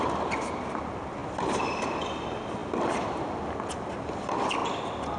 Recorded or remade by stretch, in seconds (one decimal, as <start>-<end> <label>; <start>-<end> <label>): 0.0-5.2 recorded